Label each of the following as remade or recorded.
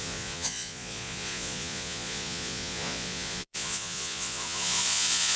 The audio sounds remade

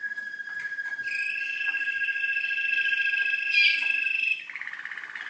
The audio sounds recorded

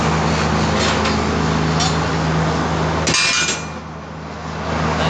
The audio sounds recorded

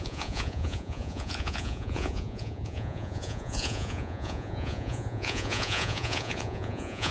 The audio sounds remade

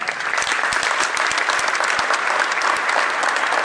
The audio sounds recorded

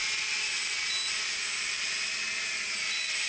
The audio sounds recorded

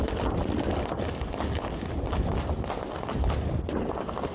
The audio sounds recorded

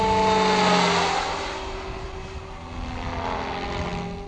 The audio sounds recorded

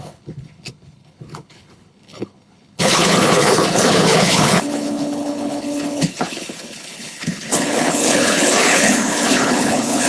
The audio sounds remade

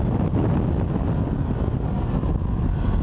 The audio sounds recorded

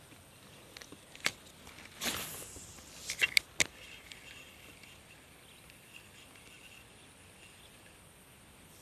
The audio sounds recorded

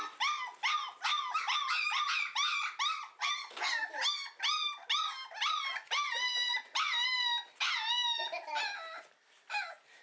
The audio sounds recorded